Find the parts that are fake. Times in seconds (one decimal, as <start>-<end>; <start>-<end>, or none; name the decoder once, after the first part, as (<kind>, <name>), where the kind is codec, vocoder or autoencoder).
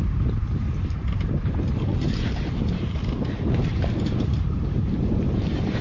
0.0-1.9 (vocoder, BigVGAN v2); 2.7-5.8